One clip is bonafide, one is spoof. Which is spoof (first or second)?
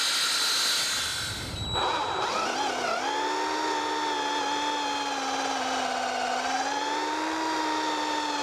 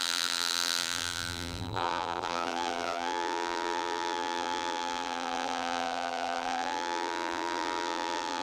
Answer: second